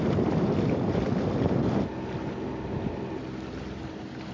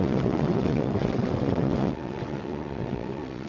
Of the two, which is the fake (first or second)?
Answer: second